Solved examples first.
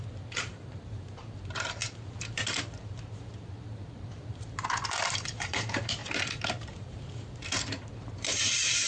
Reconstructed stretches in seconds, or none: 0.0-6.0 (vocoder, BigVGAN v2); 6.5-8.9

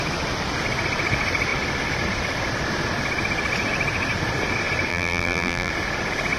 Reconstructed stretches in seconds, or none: 4.9-5.7 (vocoder, BigVGAN v2)

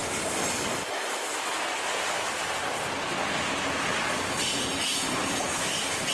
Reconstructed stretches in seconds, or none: 4.9-6.1 (vocoder, BigVGAN v2)

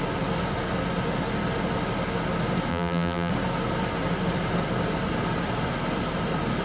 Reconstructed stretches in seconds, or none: 2.7-3.3 (vocoder, BigVGAN v2)

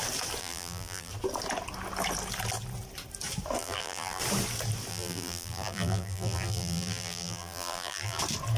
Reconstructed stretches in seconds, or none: 0.4-1.1 (vocoder, BigVGAN v2); 3.6-4.2; 4.9-8.2